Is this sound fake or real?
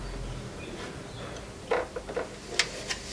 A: real